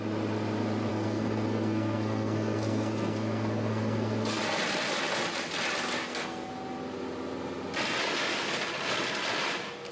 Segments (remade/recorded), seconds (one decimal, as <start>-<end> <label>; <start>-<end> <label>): 0.0-0.9 recorded; 0.9-4.4 remade; 4.4-6.0 recorded; 6.0-6.5 remade; 6.5-9.9 recorded